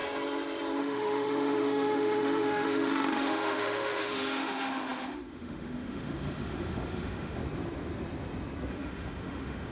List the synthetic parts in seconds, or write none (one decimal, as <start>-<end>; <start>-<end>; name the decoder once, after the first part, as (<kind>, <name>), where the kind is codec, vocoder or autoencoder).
0.8-7.4 (autoencoder, DAC-VAE); 8.7-9.7